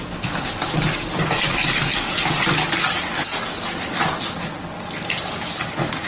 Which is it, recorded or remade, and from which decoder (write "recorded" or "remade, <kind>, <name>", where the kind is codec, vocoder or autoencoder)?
recorded